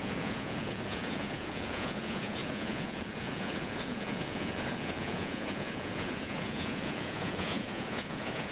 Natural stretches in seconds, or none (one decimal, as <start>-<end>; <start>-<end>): none